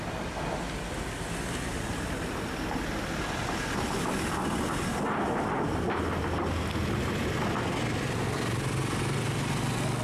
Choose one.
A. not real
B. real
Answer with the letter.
B